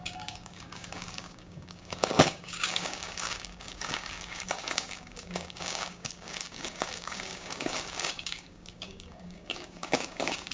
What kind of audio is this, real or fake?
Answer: fake